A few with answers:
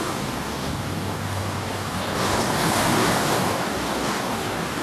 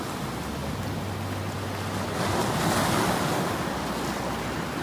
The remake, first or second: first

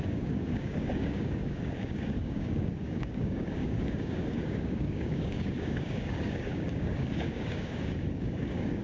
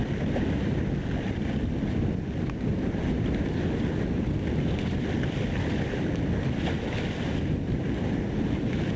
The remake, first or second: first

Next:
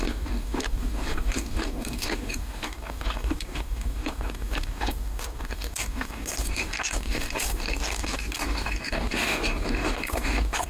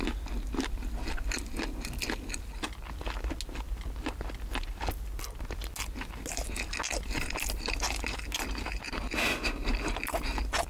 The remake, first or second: first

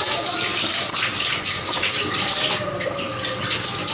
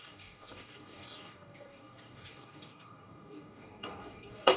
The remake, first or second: second